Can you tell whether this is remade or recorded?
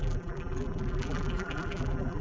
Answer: remade